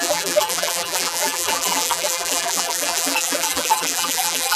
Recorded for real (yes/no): no